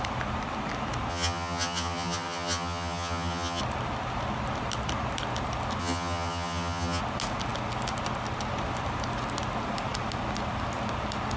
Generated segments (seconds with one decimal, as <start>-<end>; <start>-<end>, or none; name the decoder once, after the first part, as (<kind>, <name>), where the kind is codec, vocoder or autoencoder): 1.1-3.6 (vocoder, HiFi-GAN); 5.8-7.0